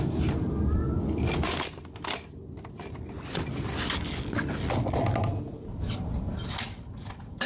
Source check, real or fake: real